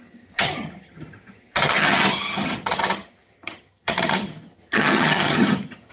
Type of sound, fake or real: fake